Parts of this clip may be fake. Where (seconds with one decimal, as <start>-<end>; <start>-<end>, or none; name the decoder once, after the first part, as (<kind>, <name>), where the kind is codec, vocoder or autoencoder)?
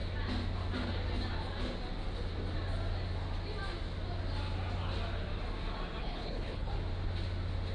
6.0-6.7 (codec, HILCodec)